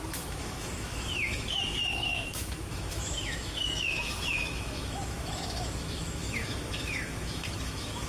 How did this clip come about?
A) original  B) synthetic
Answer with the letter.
B